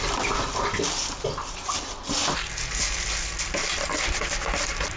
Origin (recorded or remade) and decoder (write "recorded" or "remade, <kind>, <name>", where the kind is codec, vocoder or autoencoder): recorded